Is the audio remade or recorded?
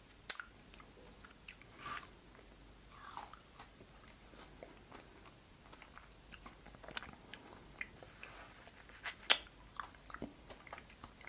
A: recorded